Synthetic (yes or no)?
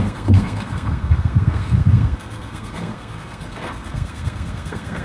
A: yes